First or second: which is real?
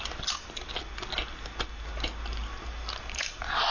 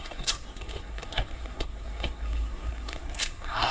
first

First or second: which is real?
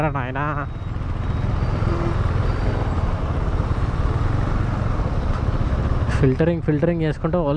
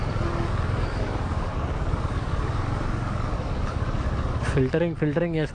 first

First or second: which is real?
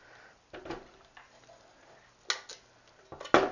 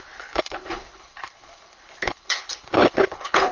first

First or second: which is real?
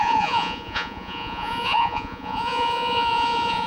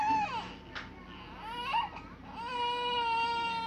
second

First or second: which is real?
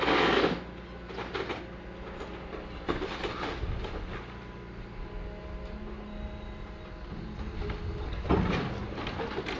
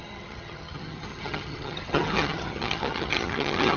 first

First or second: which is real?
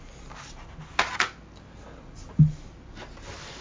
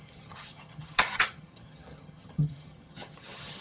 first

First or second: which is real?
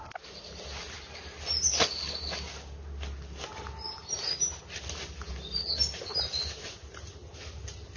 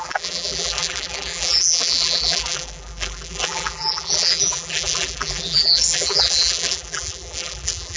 first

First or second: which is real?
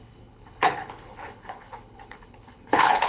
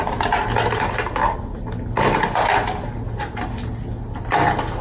second